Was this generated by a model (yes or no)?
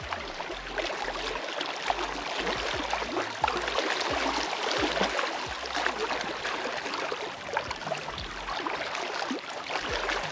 no